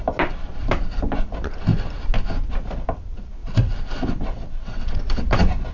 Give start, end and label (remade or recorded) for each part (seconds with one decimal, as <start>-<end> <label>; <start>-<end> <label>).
0.0-3.4 recorded; 3.4-5.0 remade; 5.0-5.7 recorded